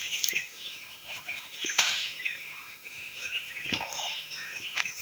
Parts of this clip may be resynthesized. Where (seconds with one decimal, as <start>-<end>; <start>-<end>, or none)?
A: 0.0-5.0

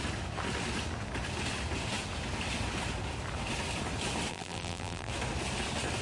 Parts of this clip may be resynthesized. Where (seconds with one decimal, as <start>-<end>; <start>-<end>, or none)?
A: 4.3-5.1

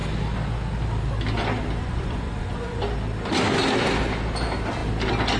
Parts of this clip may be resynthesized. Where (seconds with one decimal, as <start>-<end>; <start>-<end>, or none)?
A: 1.8-2.8